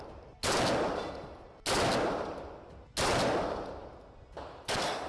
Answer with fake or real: real